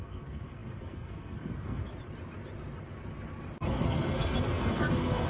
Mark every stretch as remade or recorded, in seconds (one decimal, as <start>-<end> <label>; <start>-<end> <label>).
0.0-1.8 remade; 1.8-3.6 recorded; 3.6-5.3 remade